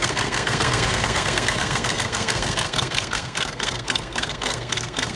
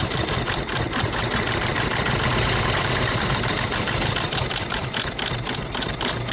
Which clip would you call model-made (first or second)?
first